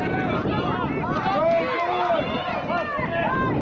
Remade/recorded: recorded